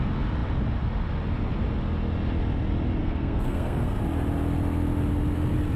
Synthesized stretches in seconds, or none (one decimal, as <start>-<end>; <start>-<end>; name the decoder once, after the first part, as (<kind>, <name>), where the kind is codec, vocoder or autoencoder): 3.0-4.0 (codec, SNAC)